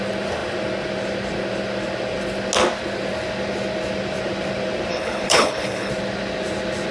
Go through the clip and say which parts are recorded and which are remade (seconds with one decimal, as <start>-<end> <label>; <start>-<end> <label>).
0.0-4.9 recorded; 4.9-5.9 remade; 5.9-6.9 recorded